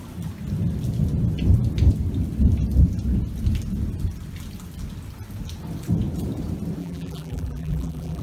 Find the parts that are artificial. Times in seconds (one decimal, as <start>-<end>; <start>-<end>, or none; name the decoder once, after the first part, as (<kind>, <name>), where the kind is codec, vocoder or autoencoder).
6.8-8.2 (vocoder, BigVGAN v2)